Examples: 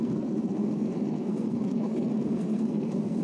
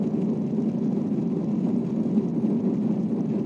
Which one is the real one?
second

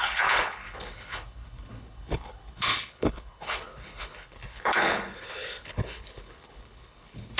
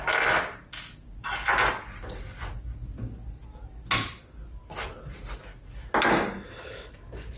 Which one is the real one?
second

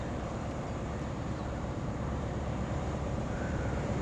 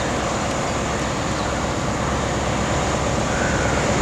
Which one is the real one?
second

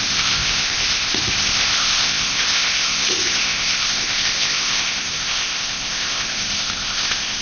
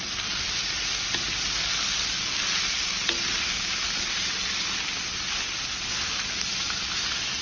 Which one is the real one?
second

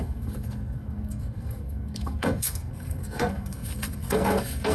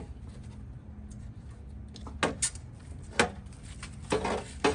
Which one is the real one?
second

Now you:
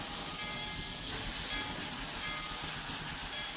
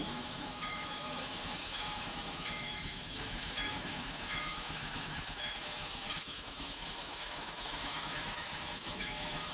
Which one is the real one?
first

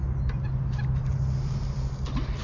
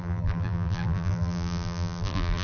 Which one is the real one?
first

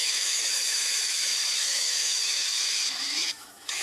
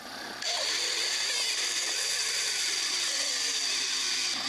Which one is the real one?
second